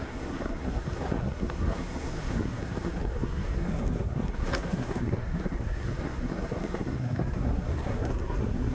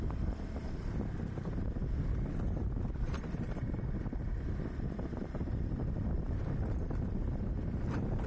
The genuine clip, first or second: second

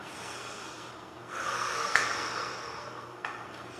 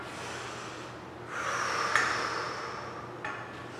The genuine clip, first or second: second